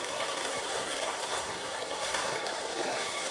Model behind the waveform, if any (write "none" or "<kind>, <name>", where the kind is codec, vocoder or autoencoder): codec, SNAC